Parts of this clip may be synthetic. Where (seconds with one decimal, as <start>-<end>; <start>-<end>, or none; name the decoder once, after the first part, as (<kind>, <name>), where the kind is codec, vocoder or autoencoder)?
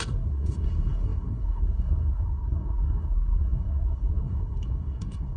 0.0-5.4 (codec, SNAC)